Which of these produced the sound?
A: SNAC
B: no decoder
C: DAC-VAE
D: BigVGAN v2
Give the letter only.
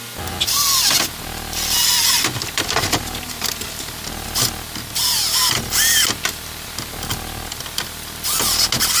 B